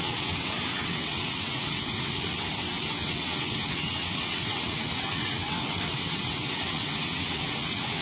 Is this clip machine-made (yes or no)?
yes